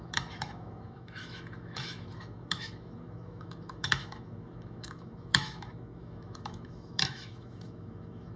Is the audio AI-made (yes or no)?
yes